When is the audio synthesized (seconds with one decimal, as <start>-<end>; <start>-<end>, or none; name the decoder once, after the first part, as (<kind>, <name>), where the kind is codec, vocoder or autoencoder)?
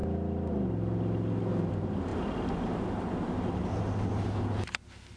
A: none